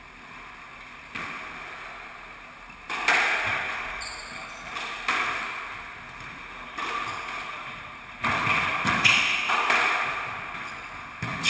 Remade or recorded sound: recorded